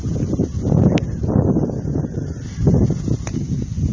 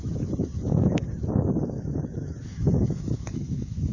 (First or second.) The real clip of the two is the first